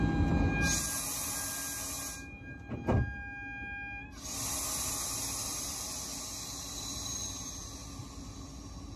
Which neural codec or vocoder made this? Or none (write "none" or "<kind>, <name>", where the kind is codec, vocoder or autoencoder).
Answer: none